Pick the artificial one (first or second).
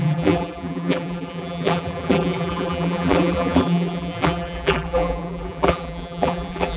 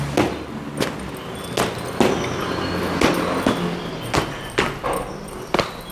first